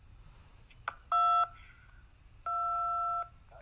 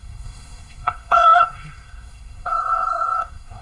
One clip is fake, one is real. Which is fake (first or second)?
second